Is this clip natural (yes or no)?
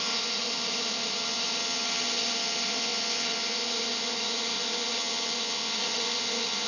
no